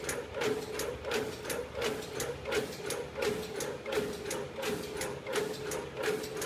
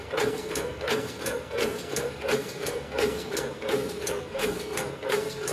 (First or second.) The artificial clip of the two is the second